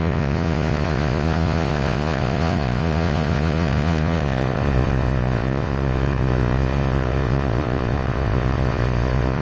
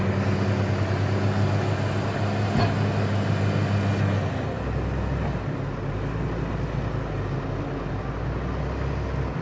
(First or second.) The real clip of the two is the second